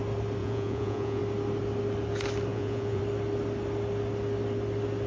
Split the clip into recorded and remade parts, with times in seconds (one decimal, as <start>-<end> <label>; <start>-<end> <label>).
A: 0.0-0.4 recorded; 0.4-1.2 remade; 1.2-2.5 recorded; 2.5-3.0 remade; 3.0-5.1 recorded